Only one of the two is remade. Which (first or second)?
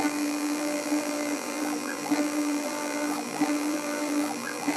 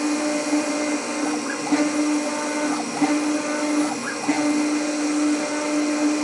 first